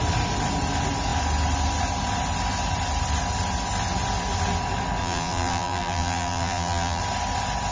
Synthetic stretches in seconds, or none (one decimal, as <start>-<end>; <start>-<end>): 5.0-7.0